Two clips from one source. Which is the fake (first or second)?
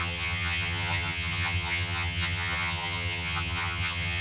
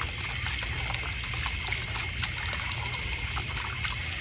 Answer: first